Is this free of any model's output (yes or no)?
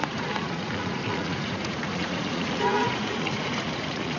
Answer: no